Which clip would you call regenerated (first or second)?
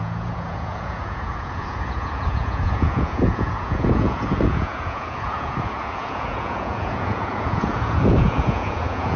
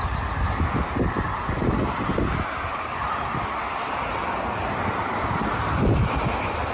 first